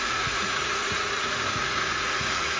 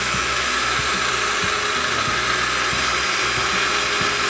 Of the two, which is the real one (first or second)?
second